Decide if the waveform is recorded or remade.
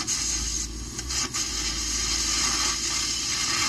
recorded